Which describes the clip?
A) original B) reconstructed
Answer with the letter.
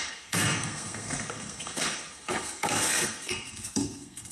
B